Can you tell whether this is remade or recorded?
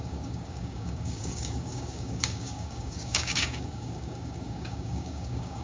remade